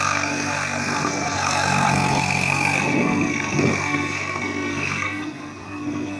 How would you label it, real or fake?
fake